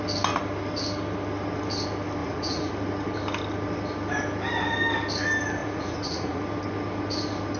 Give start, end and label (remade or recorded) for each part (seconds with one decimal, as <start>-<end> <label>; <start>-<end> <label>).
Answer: 0.0-2.2 recorded; 2.2-2.7 remade; 2.7-5.6 recorded; 5.6-6.4 remade; 6.4-7.6 recorded